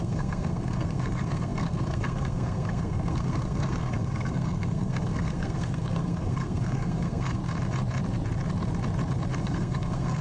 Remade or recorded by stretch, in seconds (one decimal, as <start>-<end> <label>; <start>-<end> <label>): 0.0-7.4 remade; 7.4-9.4 recorded; 9.4-10.2 remade